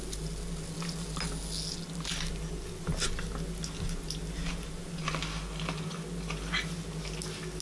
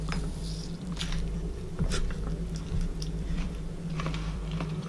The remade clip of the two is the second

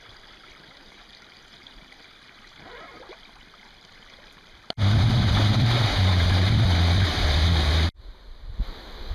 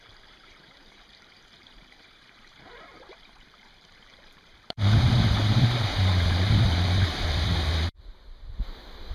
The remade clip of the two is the second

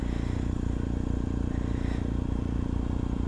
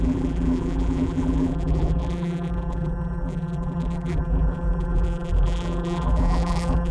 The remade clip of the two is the second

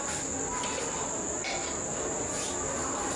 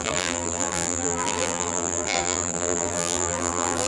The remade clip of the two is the second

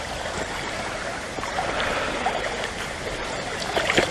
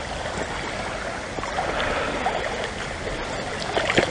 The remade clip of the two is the first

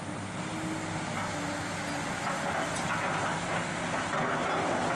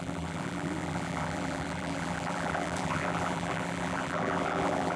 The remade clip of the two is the second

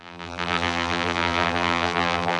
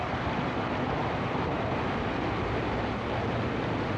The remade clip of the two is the first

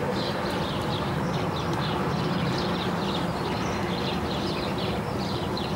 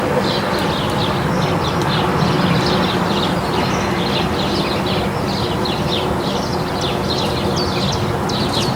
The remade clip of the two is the first